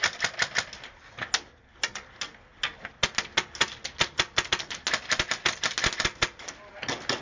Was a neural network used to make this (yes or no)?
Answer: no